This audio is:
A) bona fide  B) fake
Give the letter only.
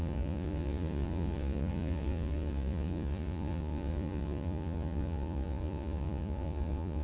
B